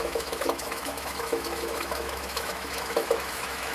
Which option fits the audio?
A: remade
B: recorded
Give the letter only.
A